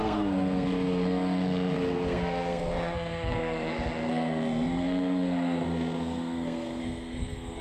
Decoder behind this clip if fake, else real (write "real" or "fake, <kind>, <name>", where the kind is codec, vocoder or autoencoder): fake, codec, SNAC